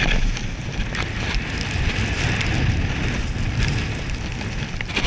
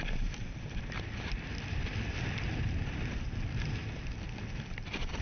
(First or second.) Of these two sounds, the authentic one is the first